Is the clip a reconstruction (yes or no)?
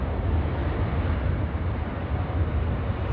no